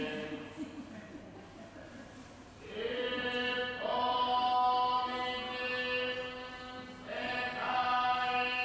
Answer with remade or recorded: recorded